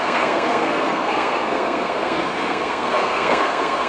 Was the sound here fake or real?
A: fake